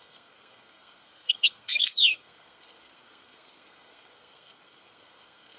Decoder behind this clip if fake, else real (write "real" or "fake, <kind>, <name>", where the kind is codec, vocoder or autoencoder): fake, codec, SNAC